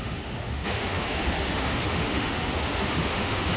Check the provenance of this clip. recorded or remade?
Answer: remade